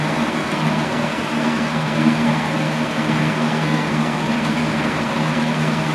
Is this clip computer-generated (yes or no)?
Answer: yes